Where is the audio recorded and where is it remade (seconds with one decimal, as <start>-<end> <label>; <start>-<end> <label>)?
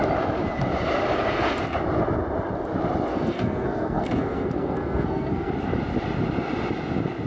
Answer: 0.0-3.1 recorded; 3.1-5.5 remade; 5.5-7.3 recorded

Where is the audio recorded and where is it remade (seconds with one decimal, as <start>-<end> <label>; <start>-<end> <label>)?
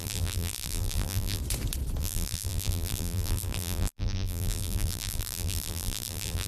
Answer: 0.0-1.4 remade; 1.4-2.0 recorded; 2.0-6.5 remade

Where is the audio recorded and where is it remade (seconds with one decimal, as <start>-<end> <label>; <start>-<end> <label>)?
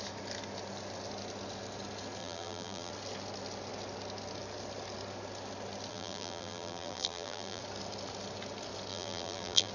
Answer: 0.0-2.2 recorded; 2.2-2.9 remade; 2.9-5.9 recorded; 5.9-7.6 remade; 7.6-8.9 recorded; 8.9-9.7 remade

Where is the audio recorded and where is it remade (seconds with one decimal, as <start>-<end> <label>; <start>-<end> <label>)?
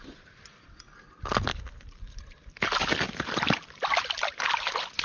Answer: 0.0-5.0 recorded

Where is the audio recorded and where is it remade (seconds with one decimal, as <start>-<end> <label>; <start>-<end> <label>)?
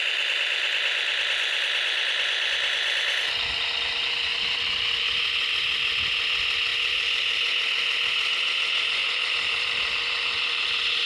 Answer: 0.0-9.0 recorded; 9.0-10.0 remade; 10.0-11.1 recorded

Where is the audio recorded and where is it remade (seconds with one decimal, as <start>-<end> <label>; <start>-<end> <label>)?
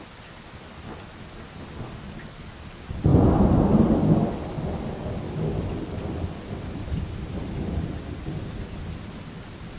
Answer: 0.0-9.8 recorded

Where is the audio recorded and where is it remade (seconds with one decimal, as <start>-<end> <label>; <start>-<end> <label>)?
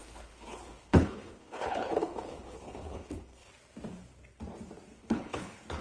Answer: 0.0-3.5 remade; 3.5-5.0 recorded; 5.0-5.8 remade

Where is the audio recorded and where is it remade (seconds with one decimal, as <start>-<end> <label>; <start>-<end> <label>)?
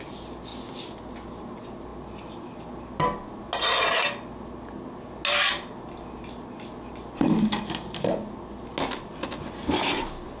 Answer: 0.0-10.4 recorded